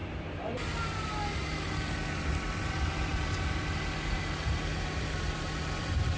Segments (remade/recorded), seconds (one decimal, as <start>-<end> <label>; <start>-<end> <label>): 0.0-2.2 recorded; 2.2-3.1 remade; 3.1-5.8 recorded; 5.8-6.2 remade